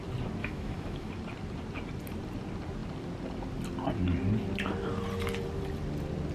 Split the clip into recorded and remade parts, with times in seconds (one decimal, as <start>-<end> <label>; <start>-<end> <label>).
0.0-0.4 recorded; 0.4-1.1 remade; 1.1-6.3 recorded